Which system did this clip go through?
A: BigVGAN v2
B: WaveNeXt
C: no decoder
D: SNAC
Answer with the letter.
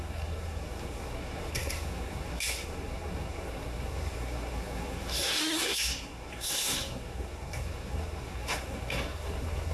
D